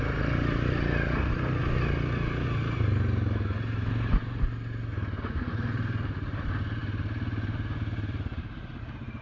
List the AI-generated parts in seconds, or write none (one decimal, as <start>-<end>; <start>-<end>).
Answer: 0.0-1.6; 5.3-9.2